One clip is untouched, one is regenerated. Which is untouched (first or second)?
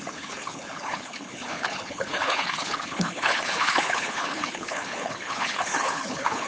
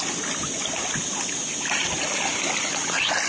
second